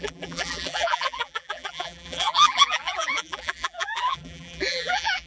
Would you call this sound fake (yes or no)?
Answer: yes